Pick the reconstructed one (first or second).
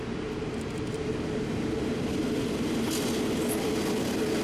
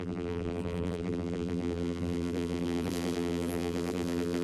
second